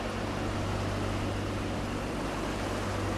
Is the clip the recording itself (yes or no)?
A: yes